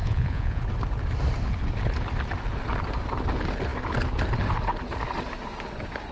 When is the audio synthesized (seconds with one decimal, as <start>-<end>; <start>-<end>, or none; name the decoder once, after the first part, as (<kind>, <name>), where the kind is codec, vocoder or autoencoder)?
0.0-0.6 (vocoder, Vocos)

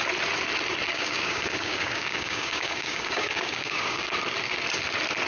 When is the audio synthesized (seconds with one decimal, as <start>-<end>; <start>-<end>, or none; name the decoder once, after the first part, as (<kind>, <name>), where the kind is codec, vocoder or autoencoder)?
0.9-4.1 (codec, DAC)

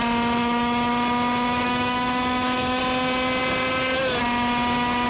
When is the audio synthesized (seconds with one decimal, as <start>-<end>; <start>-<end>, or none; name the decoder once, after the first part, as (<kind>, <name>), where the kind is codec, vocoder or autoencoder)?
0.4-0.9 (autoencoder, DAC-VAE); 1.5-2.8

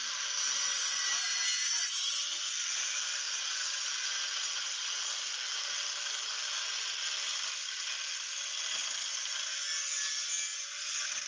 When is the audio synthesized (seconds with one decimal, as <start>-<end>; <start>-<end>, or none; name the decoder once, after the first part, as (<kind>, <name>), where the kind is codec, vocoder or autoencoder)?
none

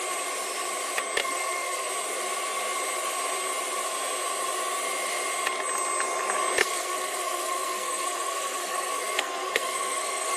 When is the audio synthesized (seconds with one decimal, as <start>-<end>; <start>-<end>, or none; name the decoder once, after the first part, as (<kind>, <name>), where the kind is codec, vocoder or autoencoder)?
1.2-1.9 (codec, SNAC); 6.6-10.4

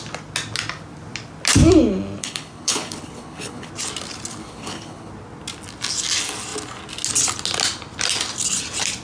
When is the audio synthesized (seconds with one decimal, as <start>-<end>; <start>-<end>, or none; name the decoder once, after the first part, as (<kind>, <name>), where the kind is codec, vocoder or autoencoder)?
2.2-3.7 (codec, HILCodec); 4.4-5.1

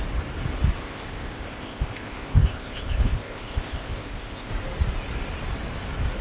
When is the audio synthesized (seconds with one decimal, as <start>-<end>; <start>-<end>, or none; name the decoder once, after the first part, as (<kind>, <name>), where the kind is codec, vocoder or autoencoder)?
0.8-4.5 (codec, ZipCodec)